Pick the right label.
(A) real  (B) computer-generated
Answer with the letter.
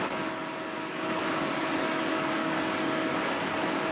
B